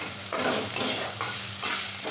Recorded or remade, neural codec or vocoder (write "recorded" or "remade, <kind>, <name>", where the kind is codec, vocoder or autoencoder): recorded